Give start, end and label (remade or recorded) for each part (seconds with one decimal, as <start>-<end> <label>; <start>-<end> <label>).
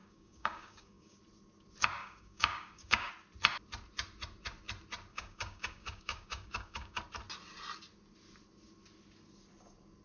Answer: 0.0-1.2 remade; 1.2-2.0 recorded; 2.0-3.1 remade; 3.1-5.1 recorded; 5.1-7.0 remade; 7.0-10.0 recorded